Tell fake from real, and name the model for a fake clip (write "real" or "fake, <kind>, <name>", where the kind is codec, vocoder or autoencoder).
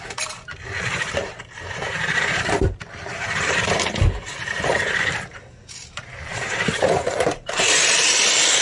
fake, vocoder, BigVGAN v2